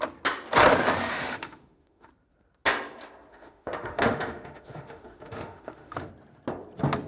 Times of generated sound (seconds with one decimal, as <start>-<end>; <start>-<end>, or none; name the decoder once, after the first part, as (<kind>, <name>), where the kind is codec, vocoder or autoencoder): 1.1-2.1 (autoencoder, DAC-VAE); 3.3-6.1

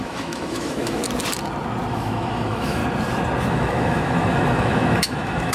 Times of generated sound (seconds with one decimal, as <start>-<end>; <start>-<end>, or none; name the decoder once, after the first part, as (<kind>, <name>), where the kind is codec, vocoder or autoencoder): 0.0-1.0 (autoencoder, DAC-VAE); 1.9-2.8; 3.5-5.5

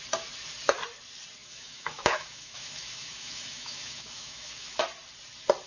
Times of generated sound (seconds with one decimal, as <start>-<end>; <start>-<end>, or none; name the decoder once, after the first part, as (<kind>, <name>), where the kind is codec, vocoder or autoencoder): 1.4-4.8 (autoencoder, DAC-VAE)

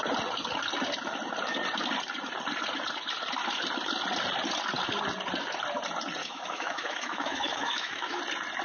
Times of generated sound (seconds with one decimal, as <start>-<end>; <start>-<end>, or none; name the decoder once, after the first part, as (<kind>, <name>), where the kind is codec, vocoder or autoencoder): 6.2-8.2 (autoencoder, DAC-VAE)

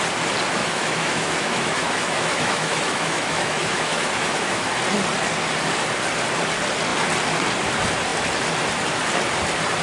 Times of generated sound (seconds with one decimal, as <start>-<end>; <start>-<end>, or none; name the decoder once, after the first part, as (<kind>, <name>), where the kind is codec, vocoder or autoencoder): 0.6-4.7 (autoencoder, DAC-VAE)